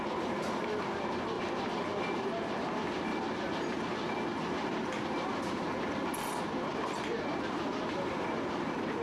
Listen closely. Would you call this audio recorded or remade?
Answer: recorded